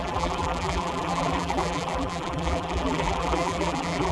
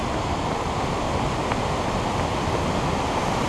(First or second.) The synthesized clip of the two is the first